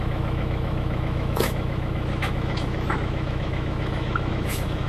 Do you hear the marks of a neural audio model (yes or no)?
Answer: yes